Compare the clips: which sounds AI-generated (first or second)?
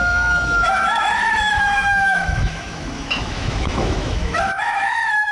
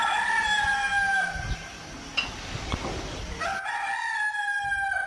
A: first